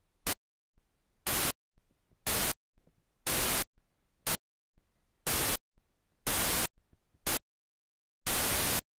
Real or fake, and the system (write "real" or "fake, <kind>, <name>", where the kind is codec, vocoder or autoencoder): real